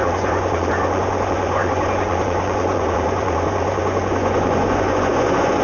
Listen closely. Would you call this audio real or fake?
fake